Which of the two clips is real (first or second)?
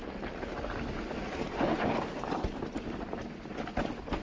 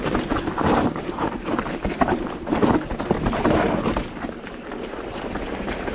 first